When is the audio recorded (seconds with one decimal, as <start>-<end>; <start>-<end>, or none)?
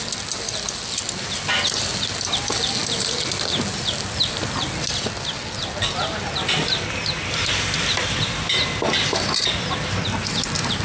0.0-10.8